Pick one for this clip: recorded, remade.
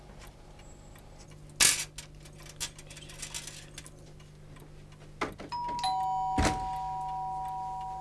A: recorded